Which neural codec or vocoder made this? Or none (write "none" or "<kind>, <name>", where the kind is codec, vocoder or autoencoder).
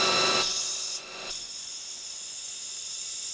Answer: vocoder, Vocos